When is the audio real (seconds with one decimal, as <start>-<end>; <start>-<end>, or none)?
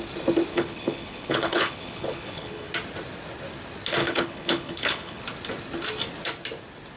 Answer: 0.0-0.5; 2.7-4.0; 5.2-7.0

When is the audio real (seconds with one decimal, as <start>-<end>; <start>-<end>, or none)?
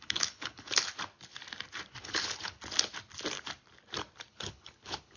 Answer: 0.9-2.0; 2.6-4.3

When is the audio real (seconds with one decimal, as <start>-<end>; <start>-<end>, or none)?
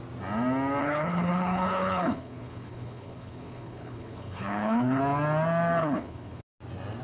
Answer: 0.0-0.8; 5.0-5.8; 6.4-7.0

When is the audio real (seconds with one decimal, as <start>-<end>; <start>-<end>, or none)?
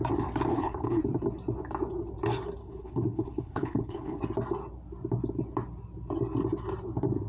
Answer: 0.0-0.5; 1.0-2.6; 4.2-7.3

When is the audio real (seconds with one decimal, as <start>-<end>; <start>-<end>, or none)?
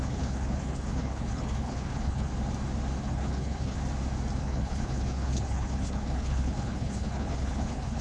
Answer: 2.3-3.0; 3.8-4.4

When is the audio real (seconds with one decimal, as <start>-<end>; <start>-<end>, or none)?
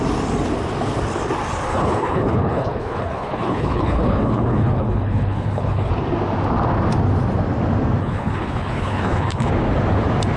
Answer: 0.0-1.7; 5.9-8.0; 9.5-10.4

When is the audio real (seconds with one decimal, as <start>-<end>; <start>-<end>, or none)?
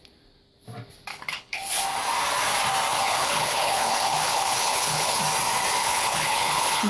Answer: 0.0-1.1; 1.8-2.9; 5.2-5.8